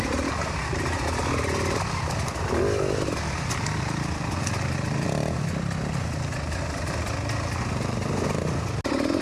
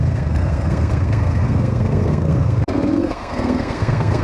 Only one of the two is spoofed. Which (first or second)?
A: second